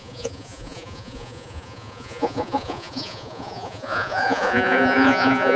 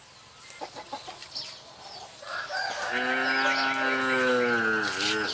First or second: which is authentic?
second